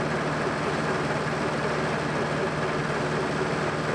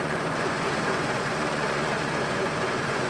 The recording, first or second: first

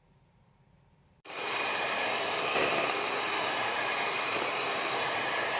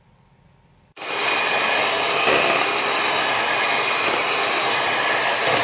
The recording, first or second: second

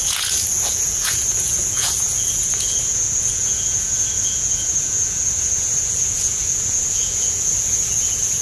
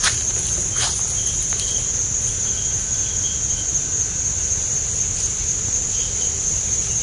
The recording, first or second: second